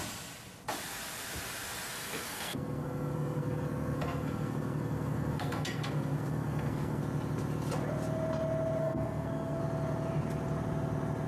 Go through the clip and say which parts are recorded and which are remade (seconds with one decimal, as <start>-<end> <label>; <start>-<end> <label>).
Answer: 0.0-1.9 recorded; 1.9-7.0 remade; 7.0-8.8 recorded; 8.8-9.6 remade; 9.6-11.3 recorded